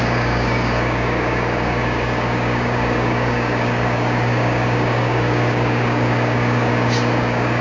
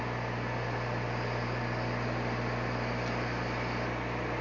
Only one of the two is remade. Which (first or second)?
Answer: first